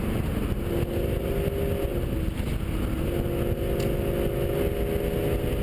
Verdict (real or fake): real